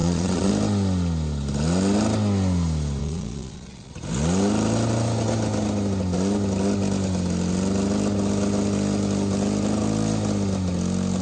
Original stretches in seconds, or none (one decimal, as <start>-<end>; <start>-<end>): 0.5-3.0; 3.9-11.2